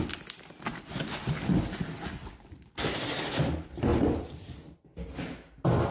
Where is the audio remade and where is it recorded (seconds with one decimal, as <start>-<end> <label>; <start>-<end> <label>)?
0.0-2.2 recorded; 2.2-3.3 remade; 3.3-3.9 recorded; 3.9-4.8 remade; 4.8-5.9 recorded